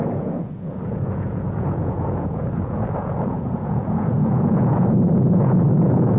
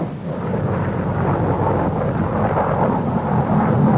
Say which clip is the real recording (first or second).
second